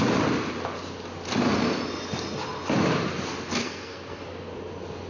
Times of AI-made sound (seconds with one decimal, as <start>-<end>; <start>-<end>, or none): 3.6-4.2